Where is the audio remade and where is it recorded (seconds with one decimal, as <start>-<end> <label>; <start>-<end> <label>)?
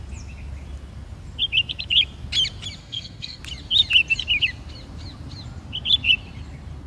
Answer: 0.0-2.8 recorded; 2.8-3.4 remade; 3.4-6.9 recorded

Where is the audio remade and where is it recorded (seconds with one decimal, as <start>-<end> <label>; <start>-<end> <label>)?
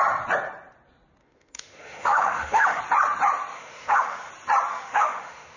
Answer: 0.0-1.2 recorded; 1.2-2.8 remade; 2.8-3.5 recorded; 3.5-4.3 remade; 4.3-4.7 recorded; 4.7-5.6 remade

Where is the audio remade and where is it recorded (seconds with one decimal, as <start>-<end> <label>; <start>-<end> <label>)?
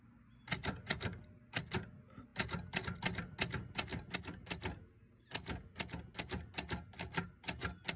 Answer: 0.0-8.0 recorded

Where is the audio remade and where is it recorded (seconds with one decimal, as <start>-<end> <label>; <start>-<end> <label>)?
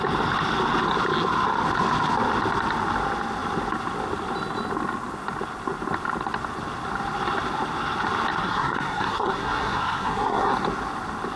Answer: 0.0-8.4 recorded; 8.4-10.5 remade; 10.5-11.4 recorded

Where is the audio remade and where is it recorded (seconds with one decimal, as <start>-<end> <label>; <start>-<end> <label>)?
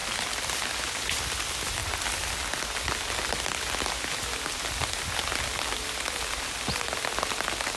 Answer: 0.0-1.2 remade; 1.2-1.8 recorded; 1.8-2.7 remade; 2.7-7.8 recorded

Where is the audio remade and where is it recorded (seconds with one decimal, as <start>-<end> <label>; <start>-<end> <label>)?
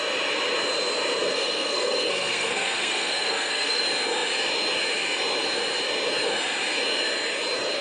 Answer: 0.0-1.3 recorded; 1.3-3.8 remade; 3.8-7.8 recorded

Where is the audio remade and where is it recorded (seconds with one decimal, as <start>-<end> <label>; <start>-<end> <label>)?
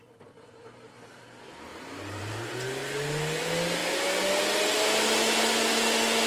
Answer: 0.0-1.7 recorded; 1.7-2.4 remade; 2.4-6.3 recorded